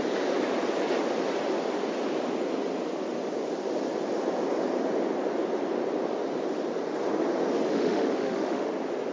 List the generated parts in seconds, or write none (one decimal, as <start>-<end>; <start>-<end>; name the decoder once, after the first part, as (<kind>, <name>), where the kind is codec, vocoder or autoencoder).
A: 7.7-8.7 (autoencoder, DAC-VAE)